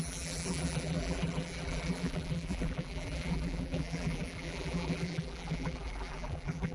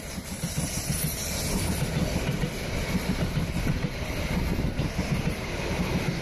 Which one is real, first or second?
second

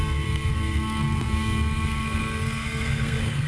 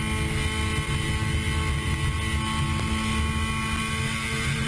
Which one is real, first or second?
second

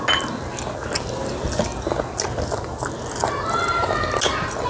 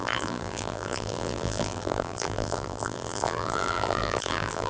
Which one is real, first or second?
first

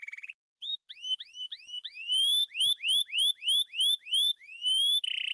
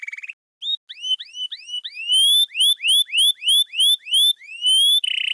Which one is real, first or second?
second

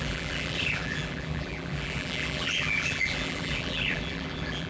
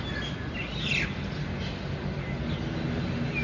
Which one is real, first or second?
second